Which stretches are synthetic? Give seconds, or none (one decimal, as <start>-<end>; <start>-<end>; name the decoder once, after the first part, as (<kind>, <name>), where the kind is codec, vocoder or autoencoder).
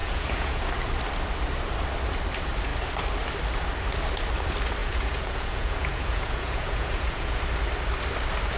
0.0-0.7 (vocoder, Vocos); 4.8-7.4